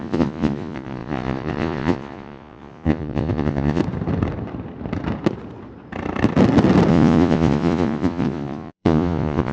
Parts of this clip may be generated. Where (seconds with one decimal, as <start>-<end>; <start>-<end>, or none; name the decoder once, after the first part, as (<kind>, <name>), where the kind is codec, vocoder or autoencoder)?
0.0-3.8 (vocoder, Vocos); 6.9-9.5

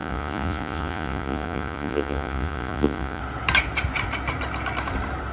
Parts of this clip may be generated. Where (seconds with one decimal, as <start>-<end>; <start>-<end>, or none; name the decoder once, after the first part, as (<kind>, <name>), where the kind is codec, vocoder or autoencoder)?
0.0-3.2 (vocoder, Vocos)

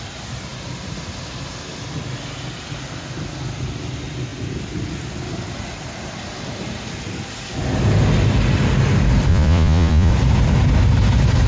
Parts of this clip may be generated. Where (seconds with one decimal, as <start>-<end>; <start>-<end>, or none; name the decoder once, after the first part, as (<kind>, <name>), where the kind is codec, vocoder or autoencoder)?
9.3-10.1 (vocoder, Vocos)

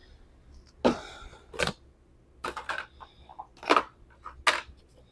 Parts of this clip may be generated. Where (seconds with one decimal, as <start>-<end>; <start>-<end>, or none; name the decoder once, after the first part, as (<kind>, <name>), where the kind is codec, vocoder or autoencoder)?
none